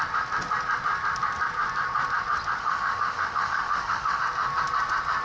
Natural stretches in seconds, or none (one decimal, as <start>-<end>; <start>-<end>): 0.0-2.6; 4.2-5.2